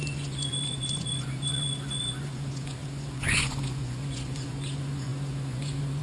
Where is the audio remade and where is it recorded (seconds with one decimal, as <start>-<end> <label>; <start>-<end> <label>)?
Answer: 0.0-6.0 remade